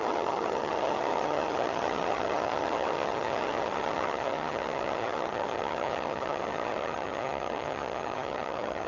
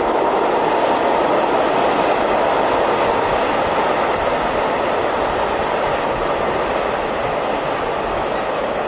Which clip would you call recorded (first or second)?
second